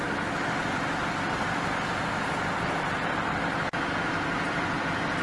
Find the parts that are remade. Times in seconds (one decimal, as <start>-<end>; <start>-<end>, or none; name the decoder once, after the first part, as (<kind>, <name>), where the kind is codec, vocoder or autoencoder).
none